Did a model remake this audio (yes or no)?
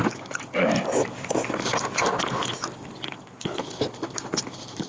no